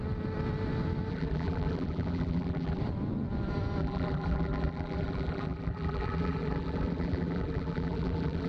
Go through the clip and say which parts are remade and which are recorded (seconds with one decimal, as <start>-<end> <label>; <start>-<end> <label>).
0.0-1.1 recorded; 1.1-2.8 remade; 2.8-3.8 recorded; 3.8-8.5 remade